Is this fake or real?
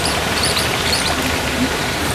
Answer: fake